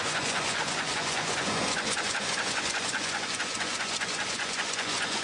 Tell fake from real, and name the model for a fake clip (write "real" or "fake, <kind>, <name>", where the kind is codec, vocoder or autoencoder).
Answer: fake, vocoder, Vocos